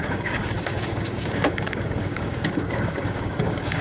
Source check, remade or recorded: remade